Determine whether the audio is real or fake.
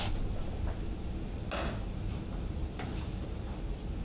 real